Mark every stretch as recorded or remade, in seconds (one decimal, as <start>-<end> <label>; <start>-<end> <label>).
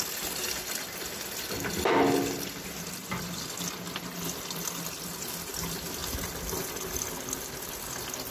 0.0-8.3 recorded